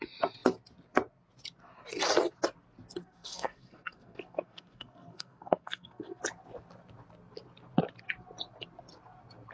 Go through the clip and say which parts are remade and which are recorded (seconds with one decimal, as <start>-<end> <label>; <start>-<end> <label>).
0.0-3.0 recorded; 3.0-6.2 remade; 6.2-9.5 recorded

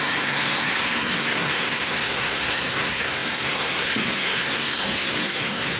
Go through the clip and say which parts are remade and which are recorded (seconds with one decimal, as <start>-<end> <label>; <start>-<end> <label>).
0.0-5.8 remade

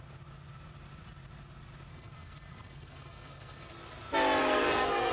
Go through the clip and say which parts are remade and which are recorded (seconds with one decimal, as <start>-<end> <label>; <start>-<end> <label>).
0.0-1.9 recorded; 1.9-3.7 remade; 3.7-4.4 recorded; 4.4-5.1 remade